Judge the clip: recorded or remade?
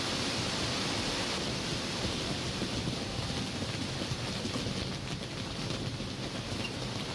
recorded